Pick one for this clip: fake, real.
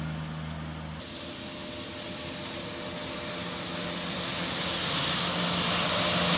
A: real